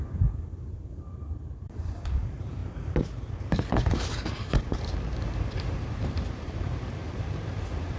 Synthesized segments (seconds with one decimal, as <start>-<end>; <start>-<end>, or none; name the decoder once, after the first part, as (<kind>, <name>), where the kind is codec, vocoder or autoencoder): 0.0-2.6 (vocoder, BigVGAN v2); 3.3-8.0